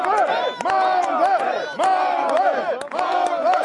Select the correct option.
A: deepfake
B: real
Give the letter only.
B